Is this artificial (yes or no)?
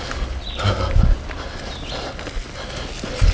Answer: no